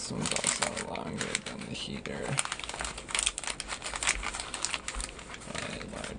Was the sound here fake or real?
real